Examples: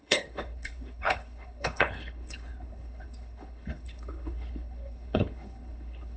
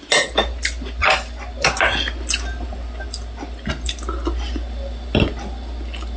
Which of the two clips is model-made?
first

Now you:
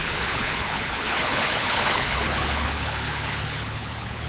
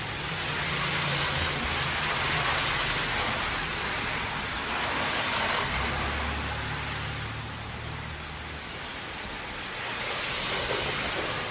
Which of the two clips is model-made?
first